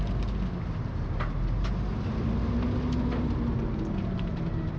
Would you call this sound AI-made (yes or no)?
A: no